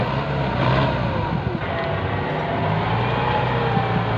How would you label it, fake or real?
real